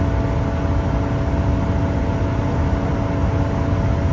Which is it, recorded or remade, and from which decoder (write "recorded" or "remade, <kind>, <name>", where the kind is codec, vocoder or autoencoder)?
recorded